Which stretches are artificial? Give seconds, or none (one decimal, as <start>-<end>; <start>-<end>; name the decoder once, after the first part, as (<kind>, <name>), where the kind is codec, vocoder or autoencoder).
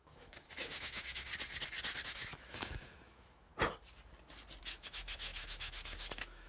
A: 0.0-1.3 (autoencoder, DAC-VAE); 2.0-3.5; 4.6-6.5